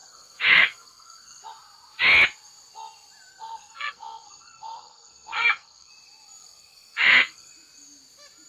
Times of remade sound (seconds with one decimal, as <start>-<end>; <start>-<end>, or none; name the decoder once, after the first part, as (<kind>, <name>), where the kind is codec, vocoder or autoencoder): 0.0-1.4 (codec, SNAC); 3.3-5.9; 6.4-7.5